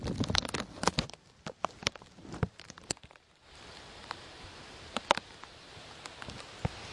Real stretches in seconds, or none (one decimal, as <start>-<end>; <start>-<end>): 0.0-1.8; 5.9-6.9